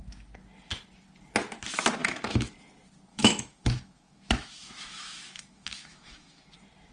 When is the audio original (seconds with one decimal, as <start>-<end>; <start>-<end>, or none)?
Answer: 0.0-2.0; 2.5-3.1; 6.5-6.9